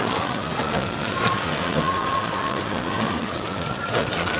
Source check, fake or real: fake